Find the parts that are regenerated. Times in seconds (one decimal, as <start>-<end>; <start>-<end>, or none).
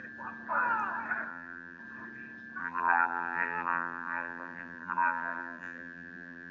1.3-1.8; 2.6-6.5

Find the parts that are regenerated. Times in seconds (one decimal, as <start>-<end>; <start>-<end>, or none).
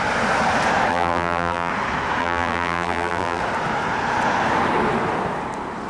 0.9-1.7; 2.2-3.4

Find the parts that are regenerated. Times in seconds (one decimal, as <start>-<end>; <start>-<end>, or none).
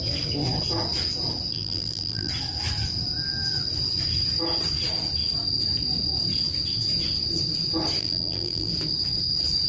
1.5-2.3; 8.0-8.7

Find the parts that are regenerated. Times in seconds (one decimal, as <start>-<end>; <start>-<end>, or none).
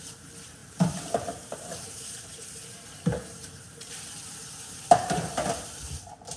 0.0-6.4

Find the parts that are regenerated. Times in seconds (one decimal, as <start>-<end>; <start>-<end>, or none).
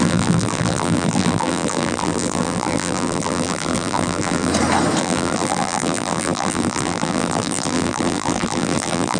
0.0-4.5; 5.0-9.2